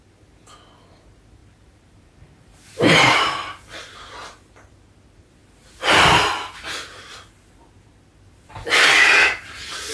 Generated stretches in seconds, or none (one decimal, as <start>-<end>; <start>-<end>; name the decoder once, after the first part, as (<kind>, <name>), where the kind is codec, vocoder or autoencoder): 1.4-4.1 (vocoder, BigVGAN v2)

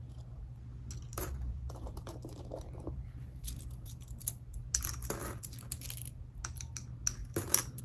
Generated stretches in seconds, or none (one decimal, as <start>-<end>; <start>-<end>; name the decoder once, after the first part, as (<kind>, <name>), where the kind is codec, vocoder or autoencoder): 1.1-4.0 (vocoder, BigVGAN v2)

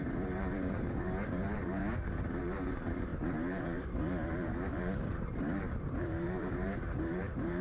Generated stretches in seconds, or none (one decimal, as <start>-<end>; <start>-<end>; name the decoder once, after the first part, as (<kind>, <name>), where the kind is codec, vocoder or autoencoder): 0.0-1.8 (vocoder, BigVGAN v2); 2.4-7.6